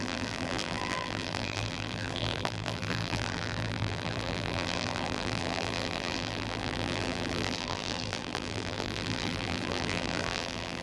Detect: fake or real fake